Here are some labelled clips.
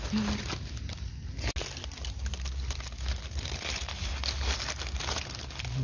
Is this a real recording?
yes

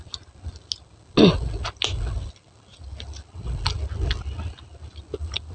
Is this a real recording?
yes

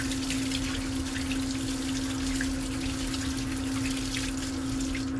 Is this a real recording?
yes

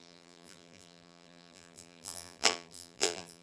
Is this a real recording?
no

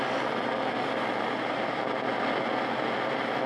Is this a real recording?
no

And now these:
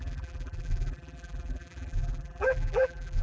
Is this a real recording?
no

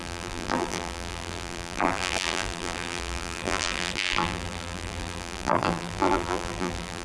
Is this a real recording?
no